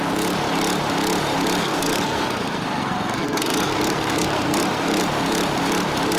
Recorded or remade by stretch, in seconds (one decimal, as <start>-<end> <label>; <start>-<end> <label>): 0.0-1.6 recorded; 1.6-5.0 remade; 5.0-6.2 recorded